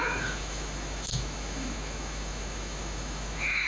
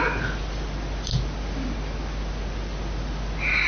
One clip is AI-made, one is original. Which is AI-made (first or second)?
first